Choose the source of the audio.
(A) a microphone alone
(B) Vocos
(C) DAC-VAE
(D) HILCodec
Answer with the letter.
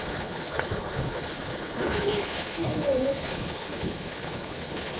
D